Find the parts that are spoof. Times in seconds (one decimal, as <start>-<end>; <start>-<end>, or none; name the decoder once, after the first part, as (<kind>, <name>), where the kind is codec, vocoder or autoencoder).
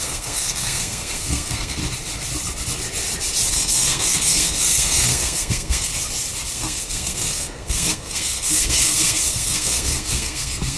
0.0-1.8 (codec, SNAC); 3.5-5.9; 6.5-10.8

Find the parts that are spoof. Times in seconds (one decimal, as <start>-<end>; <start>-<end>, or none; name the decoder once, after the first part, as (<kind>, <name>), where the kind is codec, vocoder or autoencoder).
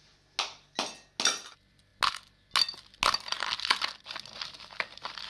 none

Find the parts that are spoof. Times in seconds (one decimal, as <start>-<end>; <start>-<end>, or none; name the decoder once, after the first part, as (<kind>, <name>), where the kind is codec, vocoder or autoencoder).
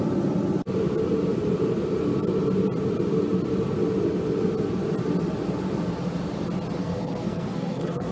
6.8-8.1 (codec, SNAC)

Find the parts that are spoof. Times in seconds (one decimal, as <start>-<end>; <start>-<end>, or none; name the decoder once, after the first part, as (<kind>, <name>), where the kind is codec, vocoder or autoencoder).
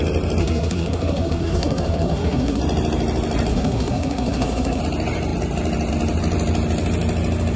0.4-2.6 (codec, SNAC); 3.5-4.8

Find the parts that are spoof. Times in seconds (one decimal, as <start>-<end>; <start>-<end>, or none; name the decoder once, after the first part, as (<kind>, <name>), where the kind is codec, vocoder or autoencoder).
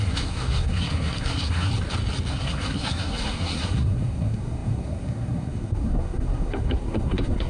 0.0-1.7 (codec, SNAC); 2.3-7.5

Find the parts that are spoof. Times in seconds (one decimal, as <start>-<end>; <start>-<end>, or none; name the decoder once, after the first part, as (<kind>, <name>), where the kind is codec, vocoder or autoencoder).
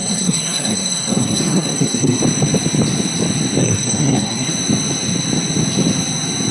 0.0-2.2 (codec, SNAC); 3.6-4.5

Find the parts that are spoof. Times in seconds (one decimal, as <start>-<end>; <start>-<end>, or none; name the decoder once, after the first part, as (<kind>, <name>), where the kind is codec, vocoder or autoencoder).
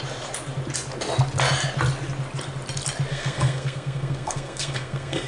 3.1-5.3 (codec, SNAC)